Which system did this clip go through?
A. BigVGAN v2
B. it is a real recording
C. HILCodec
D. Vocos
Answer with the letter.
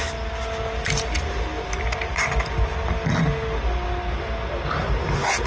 B